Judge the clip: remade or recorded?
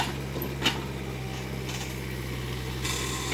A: recorded